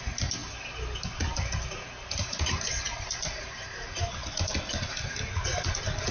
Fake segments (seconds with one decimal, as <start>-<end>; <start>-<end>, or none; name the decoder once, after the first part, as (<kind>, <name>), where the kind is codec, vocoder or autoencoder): none